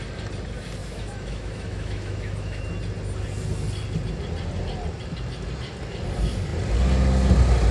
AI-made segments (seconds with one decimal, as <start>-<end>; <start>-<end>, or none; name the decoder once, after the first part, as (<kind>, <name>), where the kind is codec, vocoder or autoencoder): 0.8-2.6 (autoencoder, DAC-VAE)